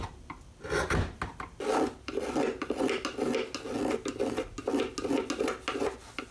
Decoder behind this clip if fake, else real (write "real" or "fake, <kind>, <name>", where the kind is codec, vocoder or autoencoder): real